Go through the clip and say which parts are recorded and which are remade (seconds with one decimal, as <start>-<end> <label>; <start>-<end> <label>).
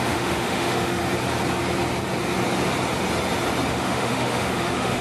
0.0-1.0 remade; 1.0-3.7 recorded; 3.7-5.0 remade